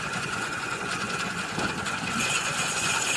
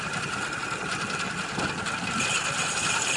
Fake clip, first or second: first